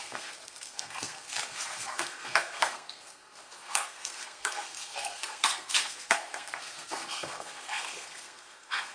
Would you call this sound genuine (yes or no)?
no